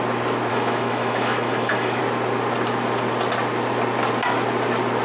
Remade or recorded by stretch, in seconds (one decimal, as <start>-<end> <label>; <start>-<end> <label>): 0.0-0.5 recorded; 0.5-2.0 remade; 2.0-5.0 recorded